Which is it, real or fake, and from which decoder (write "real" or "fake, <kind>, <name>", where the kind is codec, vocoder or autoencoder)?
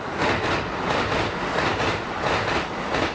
real